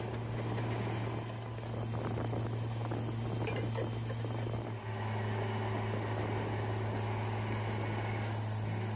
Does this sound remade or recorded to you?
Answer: recorded